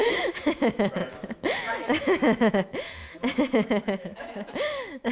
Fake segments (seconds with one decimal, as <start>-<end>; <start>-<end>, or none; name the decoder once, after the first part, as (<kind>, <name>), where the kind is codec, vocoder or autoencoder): 0.0-5.1 (autoencoder, DAC-VAE)